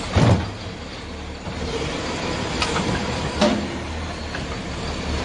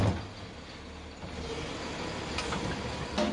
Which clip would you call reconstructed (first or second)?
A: first